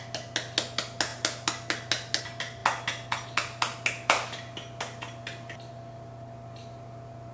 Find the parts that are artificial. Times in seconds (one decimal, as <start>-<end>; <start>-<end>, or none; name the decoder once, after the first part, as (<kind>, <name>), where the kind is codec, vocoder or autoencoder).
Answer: none

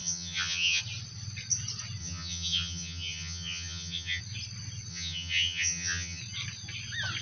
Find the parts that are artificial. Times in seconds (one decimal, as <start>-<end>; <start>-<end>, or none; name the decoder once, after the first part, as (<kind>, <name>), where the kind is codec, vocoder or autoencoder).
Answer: 0.0-0.8 (vocoder, HiFi-GAN); 2.0-4.2; 4.9-6.2

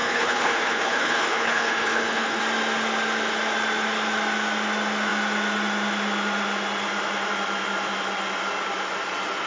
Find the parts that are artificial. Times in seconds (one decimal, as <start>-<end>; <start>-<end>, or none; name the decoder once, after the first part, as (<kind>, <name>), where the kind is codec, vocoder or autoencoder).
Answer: 0.0-2.4 (codec, HILCodec)

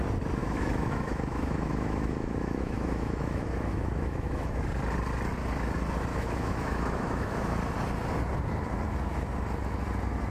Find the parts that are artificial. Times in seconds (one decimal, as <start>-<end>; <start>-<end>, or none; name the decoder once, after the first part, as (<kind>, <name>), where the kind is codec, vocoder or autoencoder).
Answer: 0.4-4.6 (autoencoder, DAC-VAE); 6.1-7.6

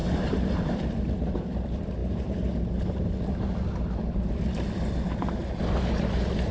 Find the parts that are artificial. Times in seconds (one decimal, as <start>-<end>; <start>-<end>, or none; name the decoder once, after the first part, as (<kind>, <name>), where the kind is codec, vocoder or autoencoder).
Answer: 0.0-0.8 (vocoder, BigVGAN v2); 2.0-3.1

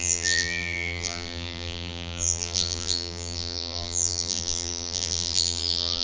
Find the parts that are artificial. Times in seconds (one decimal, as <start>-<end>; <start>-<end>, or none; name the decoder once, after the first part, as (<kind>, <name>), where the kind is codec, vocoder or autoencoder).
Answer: 0.0-6.0 (vocoder, BigVGAN v2)